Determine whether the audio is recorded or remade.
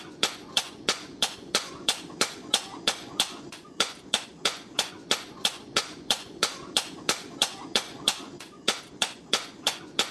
remade